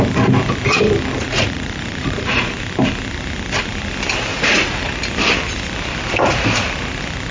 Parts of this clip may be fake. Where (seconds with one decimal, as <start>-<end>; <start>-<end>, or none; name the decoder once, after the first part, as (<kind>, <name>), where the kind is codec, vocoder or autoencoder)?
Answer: 1.2-2.5 (vocoder, Vocos); 4.3-4.8